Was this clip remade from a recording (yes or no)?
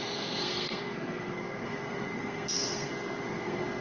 yes